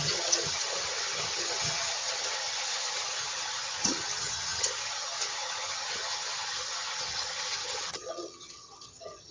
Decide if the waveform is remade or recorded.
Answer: remade